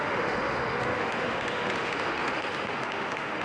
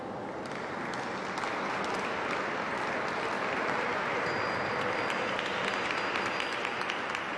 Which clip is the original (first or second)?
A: second